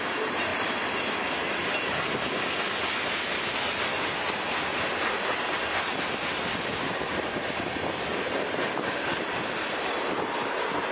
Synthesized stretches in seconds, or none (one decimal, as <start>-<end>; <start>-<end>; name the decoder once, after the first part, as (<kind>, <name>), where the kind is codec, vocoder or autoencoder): none